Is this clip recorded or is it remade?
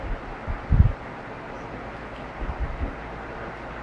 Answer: recorded